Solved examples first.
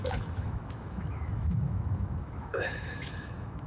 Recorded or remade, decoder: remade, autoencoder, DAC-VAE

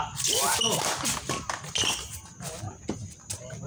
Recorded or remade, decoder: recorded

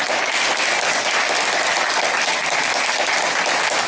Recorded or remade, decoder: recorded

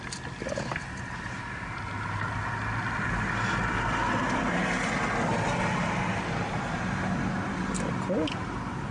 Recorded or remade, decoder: recorded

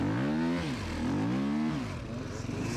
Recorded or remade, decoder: recorded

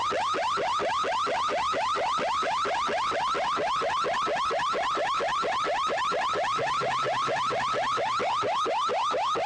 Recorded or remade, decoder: recorded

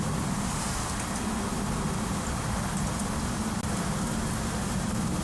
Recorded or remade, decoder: recorded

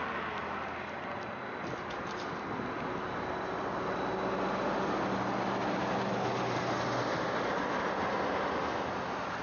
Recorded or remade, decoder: recorded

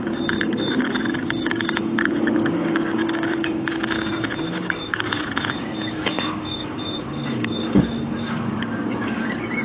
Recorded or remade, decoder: remade, codec, DAC